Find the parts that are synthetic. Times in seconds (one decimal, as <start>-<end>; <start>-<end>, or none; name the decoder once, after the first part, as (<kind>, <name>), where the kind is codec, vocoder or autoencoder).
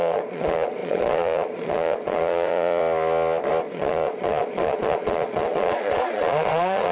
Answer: 0.0-2.8 (vocoder, Vocos); 3.7-6.9